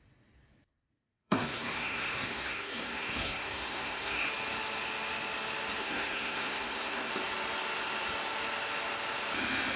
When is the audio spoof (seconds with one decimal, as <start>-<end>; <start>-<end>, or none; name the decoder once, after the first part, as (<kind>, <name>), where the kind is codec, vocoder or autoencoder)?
1.1-4.3 (codec, SNAC); 5.8-7.1